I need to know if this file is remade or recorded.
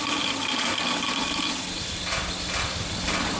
recorded